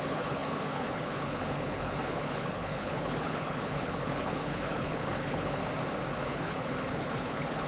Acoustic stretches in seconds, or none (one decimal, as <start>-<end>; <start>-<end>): 5.6-6.2